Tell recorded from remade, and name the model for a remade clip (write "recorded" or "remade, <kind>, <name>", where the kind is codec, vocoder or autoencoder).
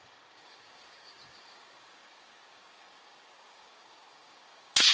remade, codec, DAC